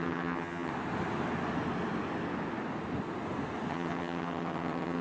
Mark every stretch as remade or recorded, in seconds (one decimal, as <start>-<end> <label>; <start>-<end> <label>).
0.0-0.7 remade; 0.7-3.7 recorded; 3.7-5.0 remade